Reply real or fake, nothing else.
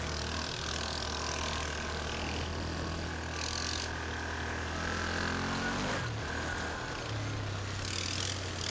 real